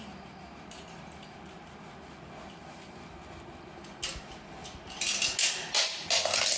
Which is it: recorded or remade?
recorded